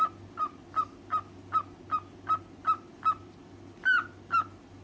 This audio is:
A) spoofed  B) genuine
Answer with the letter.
B